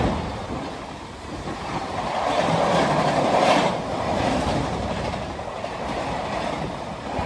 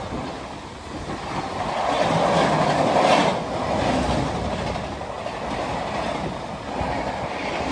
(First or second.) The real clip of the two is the second